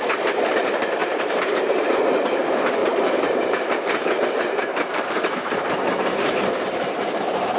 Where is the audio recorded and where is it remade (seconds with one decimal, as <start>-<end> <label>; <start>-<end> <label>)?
0.0-1.0 recorded; 1.0-1.5 remade; 1.5-2.8 recorded; 2.8-7.6 remade